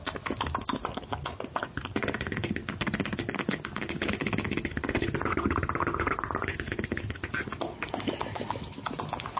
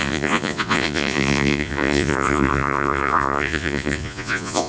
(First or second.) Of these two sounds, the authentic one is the first